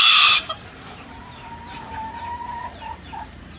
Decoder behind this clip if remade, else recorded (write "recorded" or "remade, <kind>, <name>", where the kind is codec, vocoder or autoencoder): remade, vocoder, BigVGAN v2